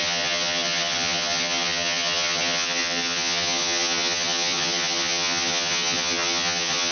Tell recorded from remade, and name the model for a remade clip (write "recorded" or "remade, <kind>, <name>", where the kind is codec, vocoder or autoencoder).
remade, vocoder, HiFi-GAN